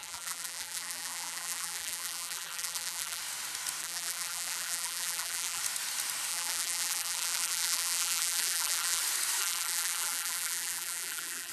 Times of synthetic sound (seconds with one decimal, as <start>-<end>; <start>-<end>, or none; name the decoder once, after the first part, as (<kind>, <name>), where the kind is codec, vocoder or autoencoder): 0.0-3.2 (vocoder, BigVGAN v2); 3.8-5.6; 6.3-9.0; 9.4-11.5